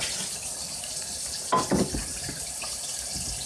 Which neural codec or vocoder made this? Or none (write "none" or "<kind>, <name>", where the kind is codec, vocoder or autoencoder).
none